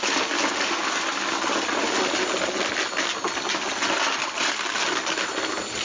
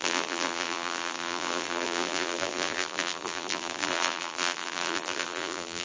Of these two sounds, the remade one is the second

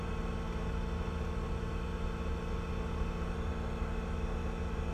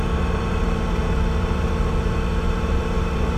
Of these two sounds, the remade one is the second